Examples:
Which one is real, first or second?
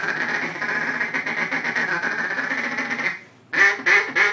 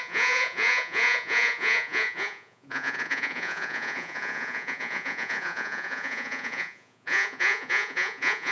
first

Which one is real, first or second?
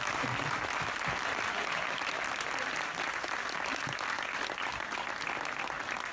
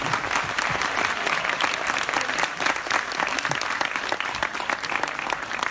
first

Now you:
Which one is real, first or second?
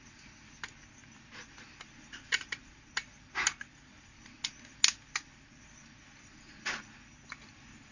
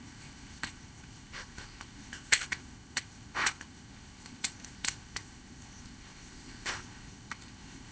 first